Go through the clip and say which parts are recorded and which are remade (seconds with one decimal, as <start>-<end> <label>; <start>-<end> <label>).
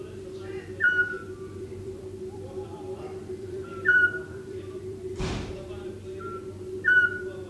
0.0-1.6 recorded; 1.6-5.9 remade; 5.9-7.5 recorded